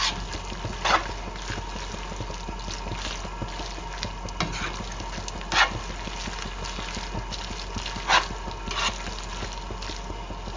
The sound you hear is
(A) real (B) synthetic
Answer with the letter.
A